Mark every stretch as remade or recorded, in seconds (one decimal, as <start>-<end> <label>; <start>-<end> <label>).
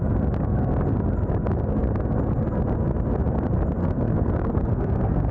0.0-3.8 recorded; 3.8-5.3 remade